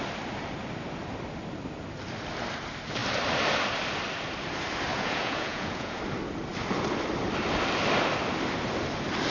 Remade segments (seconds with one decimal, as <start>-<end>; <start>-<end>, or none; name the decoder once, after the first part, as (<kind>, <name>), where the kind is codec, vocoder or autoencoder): 4.9-6.0 (vocoder, Vocos)